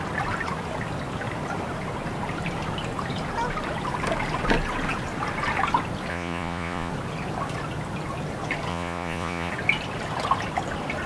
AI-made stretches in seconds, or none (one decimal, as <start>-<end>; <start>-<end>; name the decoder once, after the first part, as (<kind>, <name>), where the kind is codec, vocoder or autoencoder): 6.1-6.9 (vocoder, Vocos); 8.7-9.5